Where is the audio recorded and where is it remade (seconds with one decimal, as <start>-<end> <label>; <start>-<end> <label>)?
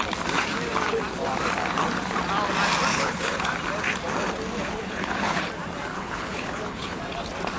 0.0-2.9 recorded; 2.9-3.5 remade; 3.5-4.8 recorded; 4.8-5.5 remade; 5.5-5.9 recorded; 5.9-7.0 remade; 7.0-7.6 recorded